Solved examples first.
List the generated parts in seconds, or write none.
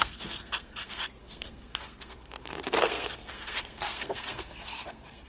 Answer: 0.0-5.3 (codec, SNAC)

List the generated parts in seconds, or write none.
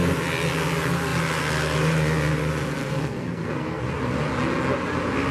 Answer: 2.8-3.8 (codec, SNAC)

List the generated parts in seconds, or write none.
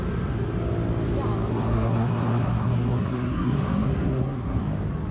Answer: 1.5-4.6 (codec, SNAC)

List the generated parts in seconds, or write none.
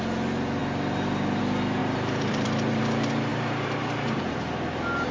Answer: 1.8-2.8 (vocoder, BigVGAN v2); 3.3-4.5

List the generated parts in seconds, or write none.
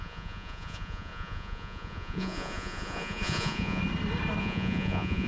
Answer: 0.0-3.8 (vocoder, Vocos); 4.4-5.3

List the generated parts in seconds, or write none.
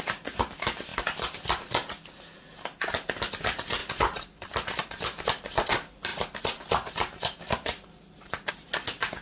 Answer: 3.8-4.8 (vocoder, BigVGAN v2); 6.1-8.5